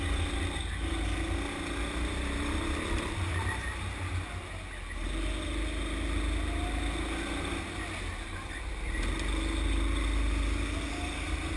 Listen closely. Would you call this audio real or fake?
real